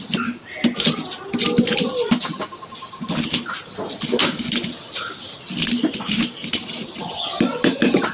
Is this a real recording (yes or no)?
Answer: yes